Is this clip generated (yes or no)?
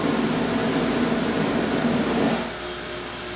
no